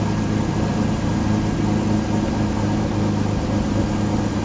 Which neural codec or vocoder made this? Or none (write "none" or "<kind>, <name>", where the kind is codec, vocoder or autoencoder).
none